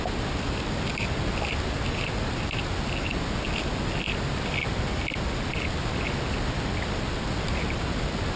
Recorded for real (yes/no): yes